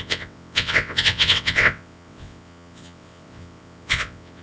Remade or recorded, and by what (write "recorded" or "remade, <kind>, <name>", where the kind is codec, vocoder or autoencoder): remade, vocoder, WaveNeXt